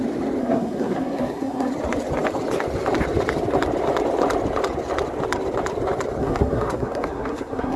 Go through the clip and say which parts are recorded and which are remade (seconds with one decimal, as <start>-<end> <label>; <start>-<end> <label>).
0.0-0.4 recorded; 0.4-1.7 remade; 1.7-6.2 recorded; 6.2-7.8 remade